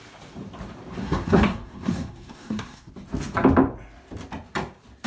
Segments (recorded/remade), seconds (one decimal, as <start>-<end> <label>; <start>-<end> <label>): 0.0-1.0 recorded; 1.0-2.9 remade; 2.9-5.1 recorded